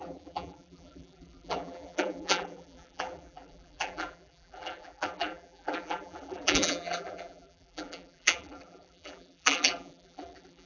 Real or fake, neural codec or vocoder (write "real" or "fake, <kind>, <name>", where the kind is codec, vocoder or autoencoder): fake, vocoder, BigVGAN v2